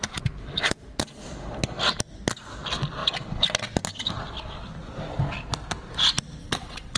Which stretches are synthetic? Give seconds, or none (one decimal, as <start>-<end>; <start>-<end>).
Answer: 6.4-7.0